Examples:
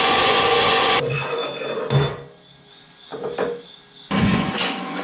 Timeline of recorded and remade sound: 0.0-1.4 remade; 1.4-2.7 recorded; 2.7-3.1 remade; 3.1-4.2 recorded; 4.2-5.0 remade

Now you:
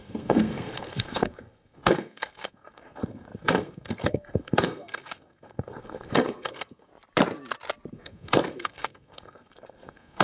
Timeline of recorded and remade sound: 0.0-6.9 remade; 6.9-7.9 recorded; 7.9-10.2 remade

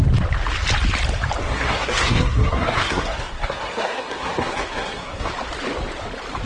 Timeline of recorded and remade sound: 0.0-1.4 recorded; 1.4-5.3 remade; 5.3-6.5 recorded

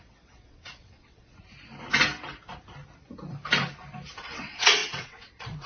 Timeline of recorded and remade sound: 0.0-1.4 remade; 1.4-4.2 recorded; 4.2-5.7 remade

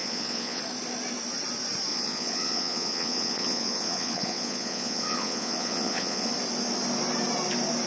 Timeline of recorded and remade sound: 0.0-0.6 remade; 0.6-1.9 recorded; 1.9-6.3 remade; 6.3-7.9 recorded

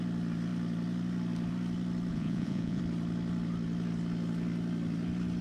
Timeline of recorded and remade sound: 0.0-2.1 recorded; 2.1-2.8 remade; 2.8-5.4 recorded

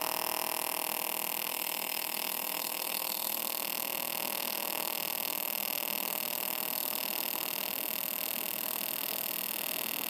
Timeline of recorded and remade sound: 0.0-1.5 recorded; 1.5-3.4 remade; 3.4-10.1 recorded